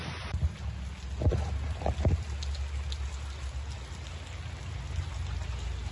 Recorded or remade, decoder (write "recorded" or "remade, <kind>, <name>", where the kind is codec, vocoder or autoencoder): recorded